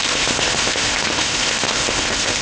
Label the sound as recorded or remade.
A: remade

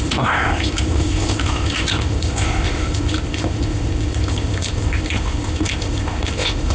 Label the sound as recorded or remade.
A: remade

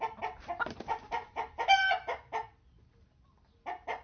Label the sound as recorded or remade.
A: recorded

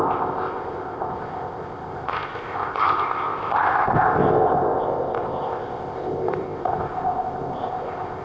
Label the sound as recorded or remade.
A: remade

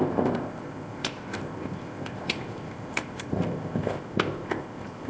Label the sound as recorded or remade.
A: remade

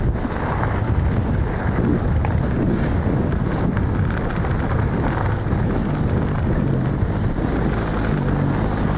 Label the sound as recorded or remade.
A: recorded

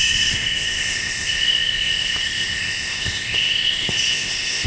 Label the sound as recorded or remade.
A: remade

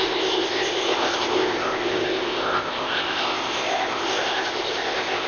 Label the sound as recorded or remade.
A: remade